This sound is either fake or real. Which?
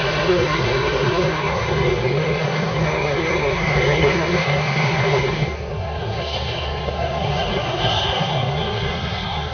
fake